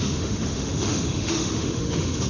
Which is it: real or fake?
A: fake